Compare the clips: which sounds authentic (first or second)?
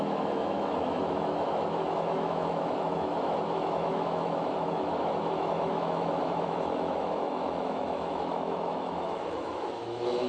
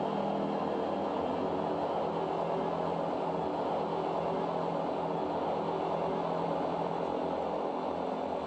second